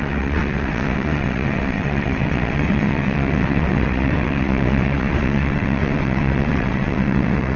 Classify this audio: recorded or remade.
remade